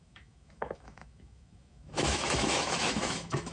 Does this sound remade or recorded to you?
remade